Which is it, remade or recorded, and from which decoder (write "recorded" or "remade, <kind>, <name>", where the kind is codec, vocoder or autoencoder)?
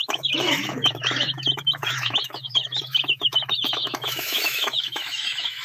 remade, autoencoder, DAC-VAE